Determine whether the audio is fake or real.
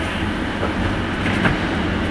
real